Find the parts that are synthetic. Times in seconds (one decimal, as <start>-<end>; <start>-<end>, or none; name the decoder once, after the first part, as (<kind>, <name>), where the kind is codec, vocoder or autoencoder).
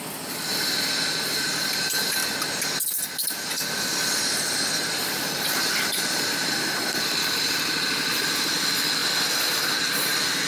0.0-2.2 (vocoder, BigVGAN v2); 4.5-10.5